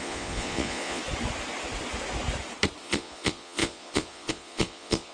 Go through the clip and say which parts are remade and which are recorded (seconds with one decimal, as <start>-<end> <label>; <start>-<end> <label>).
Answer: 0.0-1.0 remade; 1.0-2.8 recorded; 2.8-5.1 remade